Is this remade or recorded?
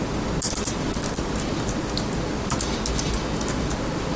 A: recorded